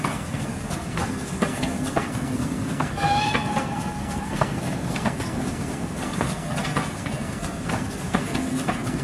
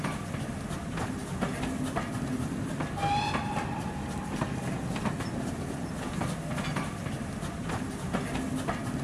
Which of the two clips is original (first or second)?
second